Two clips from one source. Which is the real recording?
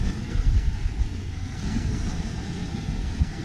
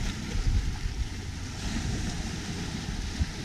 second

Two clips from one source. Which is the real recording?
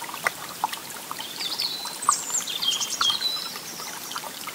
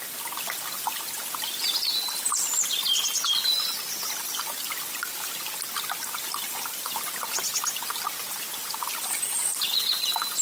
second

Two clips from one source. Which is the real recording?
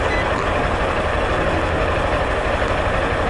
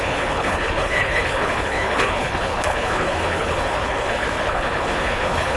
first